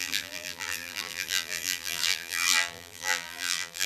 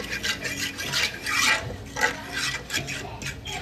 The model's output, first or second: first